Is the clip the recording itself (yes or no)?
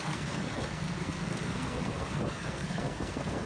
no